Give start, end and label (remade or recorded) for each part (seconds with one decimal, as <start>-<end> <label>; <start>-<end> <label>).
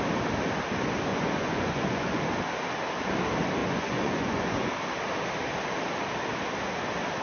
0.0-1.1 recorded; 1.1-2.2 remade; 2.2-3.6 recorded; 3.6-4.7 remade; 4.7-7.2 recorded